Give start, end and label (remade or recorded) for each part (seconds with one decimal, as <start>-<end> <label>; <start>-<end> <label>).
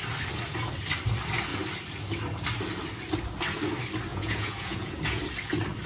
0.0-4.1 recorded; 4.1-5.2 remade; 5.2-5.9 recorded